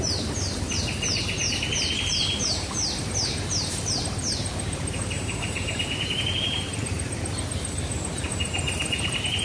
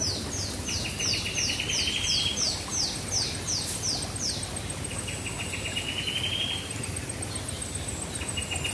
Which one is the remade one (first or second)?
first